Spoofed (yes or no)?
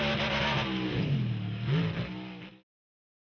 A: no